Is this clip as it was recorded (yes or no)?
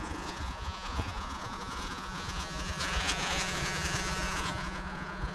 no